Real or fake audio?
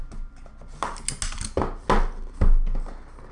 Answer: real